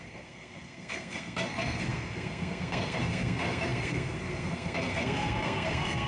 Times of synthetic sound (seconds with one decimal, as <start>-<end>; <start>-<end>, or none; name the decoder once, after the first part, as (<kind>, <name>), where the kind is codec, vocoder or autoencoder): 0.0-6.1 (codec, SNAC)

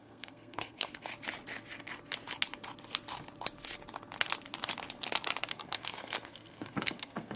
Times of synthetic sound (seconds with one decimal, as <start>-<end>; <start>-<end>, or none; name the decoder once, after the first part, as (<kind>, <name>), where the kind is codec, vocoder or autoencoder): 0.0-1.1 (codec, SNAC); 5.5-7.4